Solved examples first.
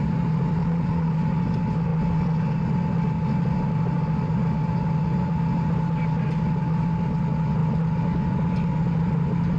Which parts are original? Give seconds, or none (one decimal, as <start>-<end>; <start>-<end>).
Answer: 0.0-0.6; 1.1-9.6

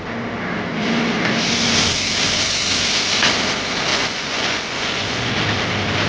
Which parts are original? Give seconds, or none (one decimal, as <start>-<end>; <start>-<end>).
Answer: 0.0-3.9; 5.4-6.1

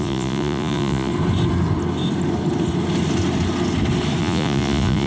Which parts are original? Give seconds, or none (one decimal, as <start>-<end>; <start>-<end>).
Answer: 1.1-4.2